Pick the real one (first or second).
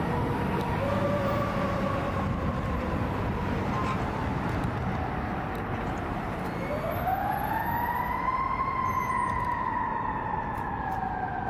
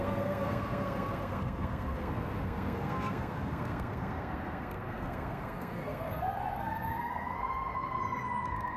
first